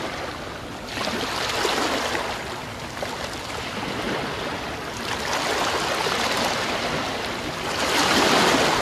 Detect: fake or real real